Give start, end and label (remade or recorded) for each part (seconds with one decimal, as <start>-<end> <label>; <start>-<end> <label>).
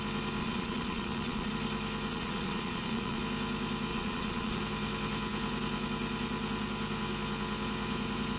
0.0-0.4 recorded; 0.4-1.5 remade; 1.5-2.1 recorded; 2.1-3.2 remade; 3.2-3.9 recorded; 3.9-4.6 remade; 4.6-8.4 recorded